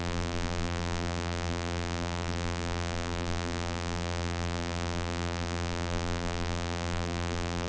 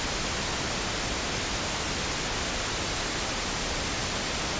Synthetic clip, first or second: first